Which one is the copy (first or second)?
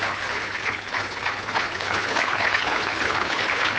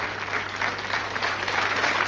first